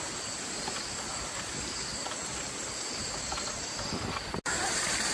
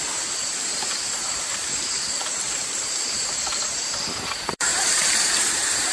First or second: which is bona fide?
first